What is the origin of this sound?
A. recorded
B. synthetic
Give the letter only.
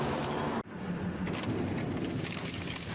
B